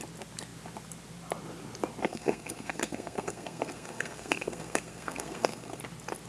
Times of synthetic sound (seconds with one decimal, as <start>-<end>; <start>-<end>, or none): 2.0-5.8